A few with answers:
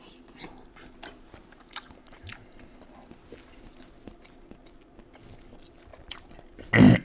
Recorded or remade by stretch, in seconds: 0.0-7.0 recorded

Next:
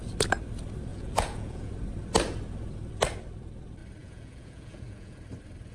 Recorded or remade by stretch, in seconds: 0.0-0.9 recorded; 0.9-1.7 remade; 1.7-4.0 recorded; 4.0-5.2 remade; 5.2-5.7 recorded

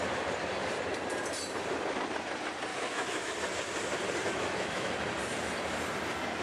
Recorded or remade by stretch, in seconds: 0.0-2.7 recorded; 2.7-3.3 remade; 3.3-4.2 recorded; 4.2-4.9 remade; 4.9-6.4 recorded

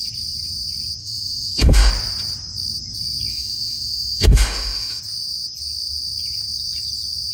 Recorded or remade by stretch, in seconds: 0.0-1.0 recorded; 1.0-1.9 remade; 1.9-3.3 recorded; 3.3-5.0 remade; 5.0-7.3 recorded

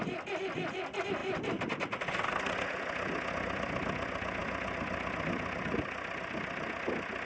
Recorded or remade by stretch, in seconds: 0.0-7.3 recorded

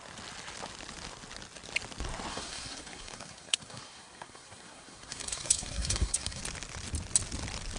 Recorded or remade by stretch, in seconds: 0.0-2.3 recorded; 2.3-6.4 remade; 6.4-7.8 recorded

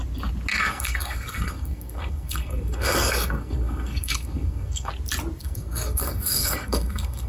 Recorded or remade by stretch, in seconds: 0.0-0.5 recorded; 0.5-4.9 remade; 4.9-5.4 recorded; 5.4-7.3 remade